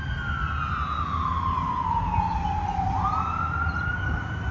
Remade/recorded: recorded